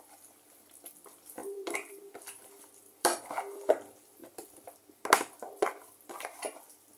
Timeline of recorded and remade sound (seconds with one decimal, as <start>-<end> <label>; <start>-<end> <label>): 0.0-1.4 recorded; 1.4-3.2 remade; 3.2-7.0 recorded